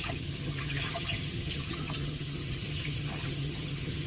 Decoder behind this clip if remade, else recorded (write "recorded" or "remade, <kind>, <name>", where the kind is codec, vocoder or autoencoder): remade, vocoder, HiFi-GAN